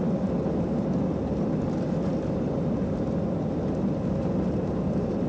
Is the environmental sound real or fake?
real